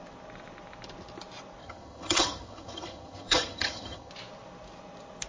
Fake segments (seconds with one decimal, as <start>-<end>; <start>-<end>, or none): 1.6-4.1